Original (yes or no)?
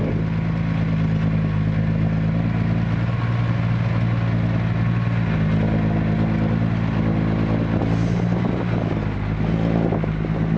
yes